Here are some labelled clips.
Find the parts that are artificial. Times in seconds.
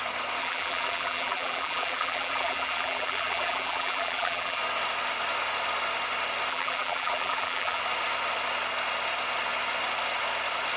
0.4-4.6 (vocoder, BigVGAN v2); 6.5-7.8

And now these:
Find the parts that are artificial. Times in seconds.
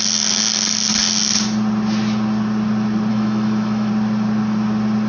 3.1-3.9 (autoencoder, DAC-VAE)